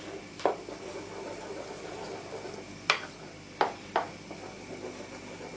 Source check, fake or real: real